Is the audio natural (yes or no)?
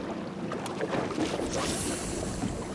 yes